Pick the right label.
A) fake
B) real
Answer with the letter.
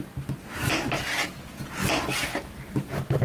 B